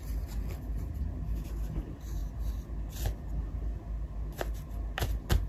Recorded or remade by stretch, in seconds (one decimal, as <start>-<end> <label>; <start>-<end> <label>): 0.0-5.5 recorded